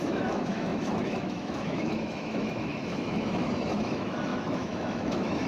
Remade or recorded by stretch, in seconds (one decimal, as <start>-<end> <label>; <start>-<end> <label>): 0.0-5.5 remade